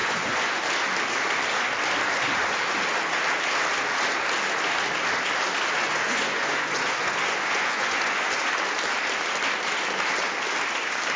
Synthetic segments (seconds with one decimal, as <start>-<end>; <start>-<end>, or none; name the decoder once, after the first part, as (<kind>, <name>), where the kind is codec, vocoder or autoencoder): 0.0-0.6 (vocoder, Vocos); 5.8-8.4